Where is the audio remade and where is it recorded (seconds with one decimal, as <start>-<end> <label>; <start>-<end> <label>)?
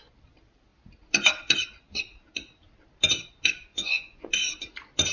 0.0-3.7 recorded; 3.7-4.3 remade; 4.3-5.1 recorded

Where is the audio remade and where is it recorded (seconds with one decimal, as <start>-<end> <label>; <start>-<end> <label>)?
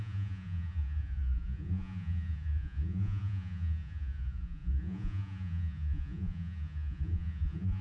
0.0-7.8 remade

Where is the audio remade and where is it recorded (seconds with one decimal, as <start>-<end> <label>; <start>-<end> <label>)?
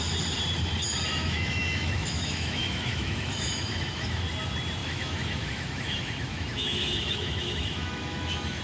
0.0-1.1 recorded; 1.1-4.2 remade; 4.2-4.8 recorded; 4.8-8.6 remade